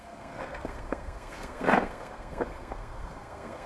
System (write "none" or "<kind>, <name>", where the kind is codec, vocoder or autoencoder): codec, SNAC